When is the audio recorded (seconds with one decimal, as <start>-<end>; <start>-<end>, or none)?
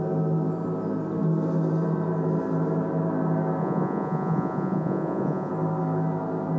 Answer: 0.0-3.6; 5.5-6.6